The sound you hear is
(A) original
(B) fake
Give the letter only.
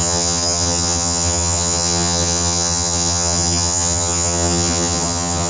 B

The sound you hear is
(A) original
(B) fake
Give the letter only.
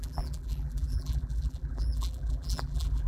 B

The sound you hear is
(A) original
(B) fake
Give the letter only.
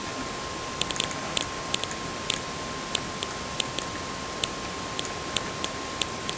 A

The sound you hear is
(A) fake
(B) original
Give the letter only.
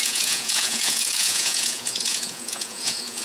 A